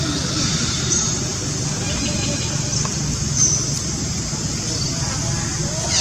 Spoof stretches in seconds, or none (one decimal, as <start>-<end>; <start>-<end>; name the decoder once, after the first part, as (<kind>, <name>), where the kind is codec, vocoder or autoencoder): none